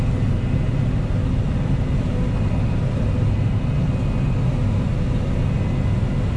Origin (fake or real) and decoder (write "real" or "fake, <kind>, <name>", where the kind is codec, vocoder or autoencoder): real